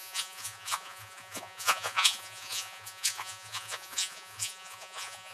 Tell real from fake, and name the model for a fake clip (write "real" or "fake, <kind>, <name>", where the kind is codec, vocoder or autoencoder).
fake, vocoder, Vocos